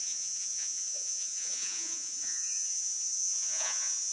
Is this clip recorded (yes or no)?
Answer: no